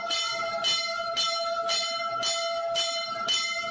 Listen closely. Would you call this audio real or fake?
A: real